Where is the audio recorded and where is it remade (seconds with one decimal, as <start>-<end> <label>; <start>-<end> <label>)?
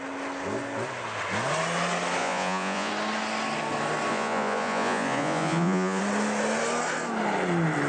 0.0-2.2 recorded; 2.2-2.9 remade; 2.9-4.1 recorded; 4.1-6.0 remade; 6.0-7.9 recorded